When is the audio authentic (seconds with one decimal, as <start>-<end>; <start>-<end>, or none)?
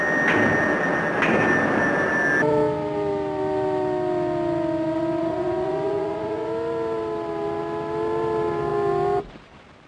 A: 0.0-5.2; 6.5-9.9